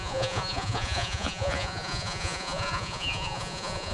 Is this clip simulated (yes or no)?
yes